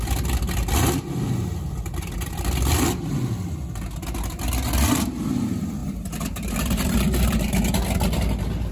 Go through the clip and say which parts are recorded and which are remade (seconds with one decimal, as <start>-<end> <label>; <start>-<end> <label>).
0.0-5.8 recorded; 5.8-7.5 remade; 7.5-8.7 recorded